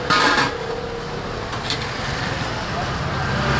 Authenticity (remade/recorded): recorded